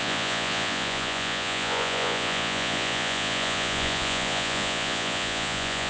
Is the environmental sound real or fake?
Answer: fake